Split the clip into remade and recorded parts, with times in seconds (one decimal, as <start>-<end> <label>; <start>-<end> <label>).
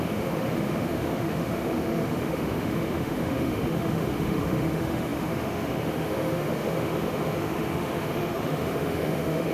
0.0-9.5 remade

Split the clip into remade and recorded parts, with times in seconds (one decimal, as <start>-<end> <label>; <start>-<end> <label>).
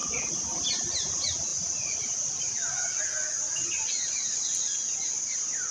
0.0-0.7 remade; 0.7-1.5 recorded; 1.5-3.9 remade; 3.9-5.7 recorded